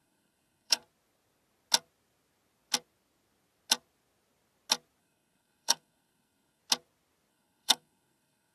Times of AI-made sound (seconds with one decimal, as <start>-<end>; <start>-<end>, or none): 0.0-0.8; 5.0-6.6; 7.3-8.5